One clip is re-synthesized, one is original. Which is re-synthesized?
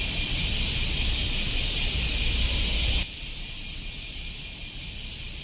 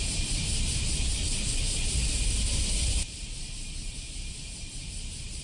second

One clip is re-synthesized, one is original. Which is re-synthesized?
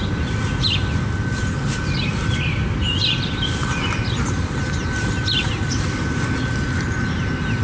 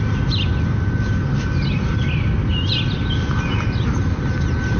first